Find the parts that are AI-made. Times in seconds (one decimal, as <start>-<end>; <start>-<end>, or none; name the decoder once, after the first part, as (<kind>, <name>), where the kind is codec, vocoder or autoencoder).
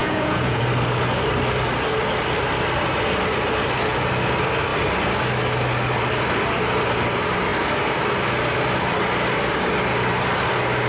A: 0.0-0.6 (vocoder, Vocos)